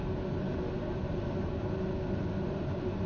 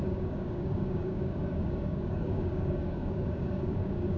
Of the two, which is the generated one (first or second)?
second